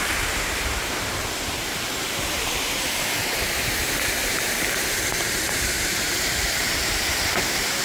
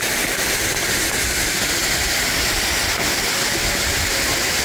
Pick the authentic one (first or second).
second